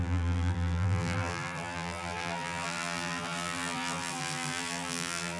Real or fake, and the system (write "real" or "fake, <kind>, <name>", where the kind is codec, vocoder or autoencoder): fake, vocoder, BigVGAN v2